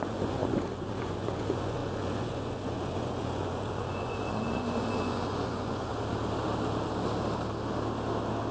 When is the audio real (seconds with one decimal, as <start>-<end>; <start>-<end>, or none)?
5.9-8.5